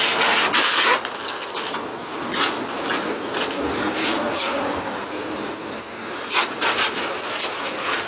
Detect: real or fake real